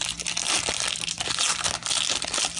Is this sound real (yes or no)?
yes